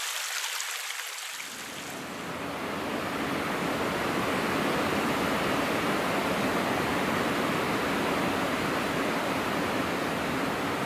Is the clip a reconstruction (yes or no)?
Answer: no